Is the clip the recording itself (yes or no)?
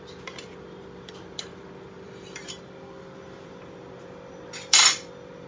no